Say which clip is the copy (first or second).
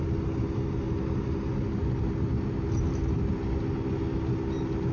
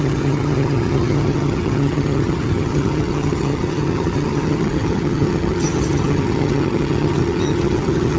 second